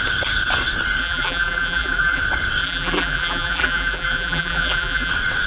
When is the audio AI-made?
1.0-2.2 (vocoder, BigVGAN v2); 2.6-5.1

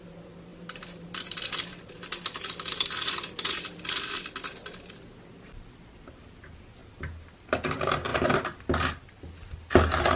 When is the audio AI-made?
none

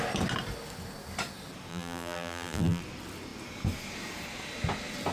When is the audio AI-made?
1.7-2.8 (vocoder, BigVGAN v2)

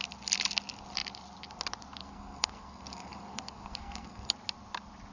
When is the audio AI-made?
2.0-4.3 (codec, SNAC)

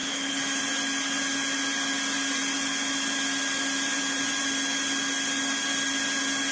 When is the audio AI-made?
0.0-0.6 (autoencoder, DAC-VAE)

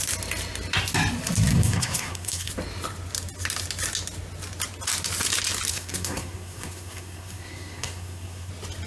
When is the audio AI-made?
1.5-2.5 (codec, SNAC); 5.7-8.5

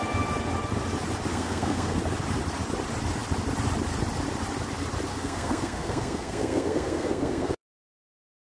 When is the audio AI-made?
1.3-2.0 (codec, SNAC); 5.1-8.5